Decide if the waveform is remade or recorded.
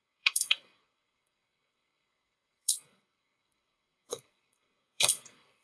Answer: remade